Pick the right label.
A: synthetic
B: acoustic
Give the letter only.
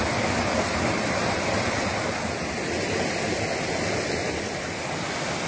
B